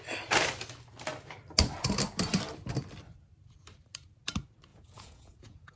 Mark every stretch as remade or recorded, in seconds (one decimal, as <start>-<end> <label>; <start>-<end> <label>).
0.0-4.7 recorded; 4.7-5.8 remade